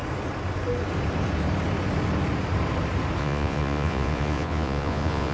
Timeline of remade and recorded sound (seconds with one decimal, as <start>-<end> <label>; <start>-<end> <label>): 0.0-3.2 recorded; 3.2-5.3 remade